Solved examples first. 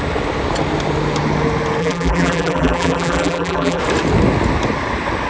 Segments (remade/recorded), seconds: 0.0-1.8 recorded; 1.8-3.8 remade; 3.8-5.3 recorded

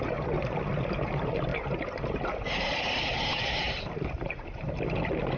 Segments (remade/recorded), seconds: 0.0-1.5 recorded; 1.5-4.7 remade; 4.7-5.4 recorded

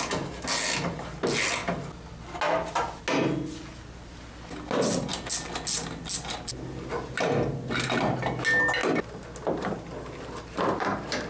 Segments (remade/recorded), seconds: 0.0-11.3 recorded